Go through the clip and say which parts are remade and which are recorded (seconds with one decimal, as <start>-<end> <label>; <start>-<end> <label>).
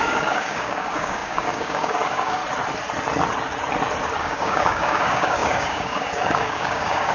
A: 0.0-2.4 remade; 2.4-4.2 recorded; 4.2-7.1 remade